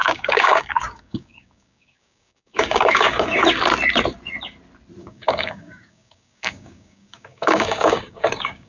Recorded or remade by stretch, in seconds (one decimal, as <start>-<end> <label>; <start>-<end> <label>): 0.0-3.4 remade; 3.4-5.0 recorded; 5.0-8.7 remade